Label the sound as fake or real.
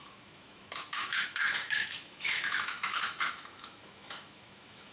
fake